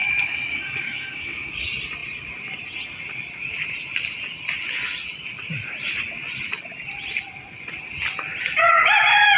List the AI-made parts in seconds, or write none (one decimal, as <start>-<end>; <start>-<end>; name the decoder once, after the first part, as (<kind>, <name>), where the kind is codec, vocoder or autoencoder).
0.0-1.5 (autoencoder, DAC-VAE)